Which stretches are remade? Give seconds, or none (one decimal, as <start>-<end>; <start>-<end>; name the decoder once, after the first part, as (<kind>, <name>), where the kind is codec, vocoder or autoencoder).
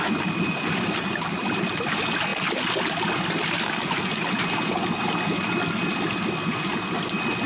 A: none